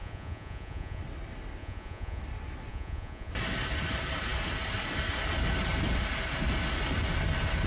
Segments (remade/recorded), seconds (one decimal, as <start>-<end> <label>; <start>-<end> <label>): 0.0-1.0 remade; 1.0-1.6 recorded; 1.6-2.2 remade; 2.2-2.7 recorded; 2.7-3.3 remade; 3.3-7.7 recorded